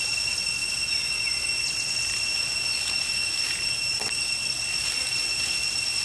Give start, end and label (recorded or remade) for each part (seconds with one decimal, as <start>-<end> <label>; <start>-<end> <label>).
0.0-6.0 recorded